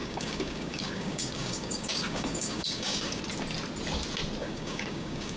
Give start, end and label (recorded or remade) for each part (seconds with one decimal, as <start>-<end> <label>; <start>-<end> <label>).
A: 0.0-3.2 remade; 3.2-4.4 recorded; 4.4-5.4 remade